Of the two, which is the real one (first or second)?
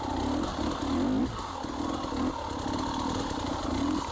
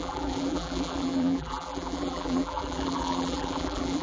first